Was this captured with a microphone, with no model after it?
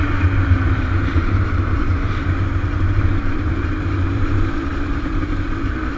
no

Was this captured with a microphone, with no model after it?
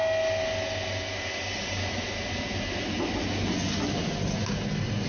yes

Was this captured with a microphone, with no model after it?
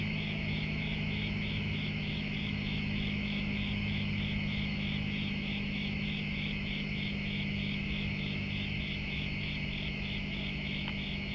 no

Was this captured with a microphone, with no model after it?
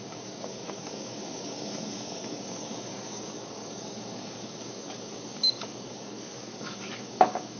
no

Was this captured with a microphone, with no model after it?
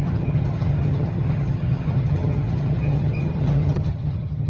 no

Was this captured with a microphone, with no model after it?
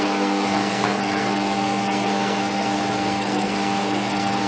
no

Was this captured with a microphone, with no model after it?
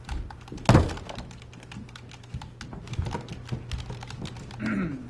yes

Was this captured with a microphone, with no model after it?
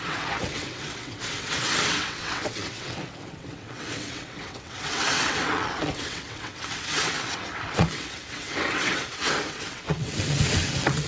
no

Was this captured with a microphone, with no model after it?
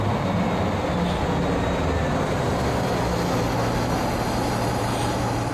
yes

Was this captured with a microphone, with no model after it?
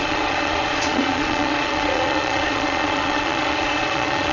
no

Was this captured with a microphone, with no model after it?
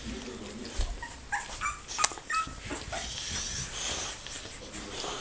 yes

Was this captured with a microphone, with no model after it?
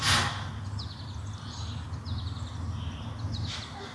yes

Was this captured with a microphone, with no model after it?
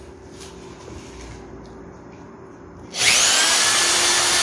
yes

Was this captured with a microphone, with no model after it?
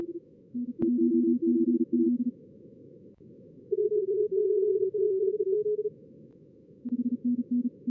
no